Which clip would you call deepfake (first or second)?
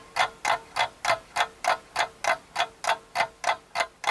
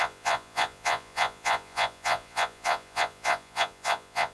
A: second